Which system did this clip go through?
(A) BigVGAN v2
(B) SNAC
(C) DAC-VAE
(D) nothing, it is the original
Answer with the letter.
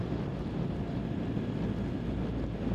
D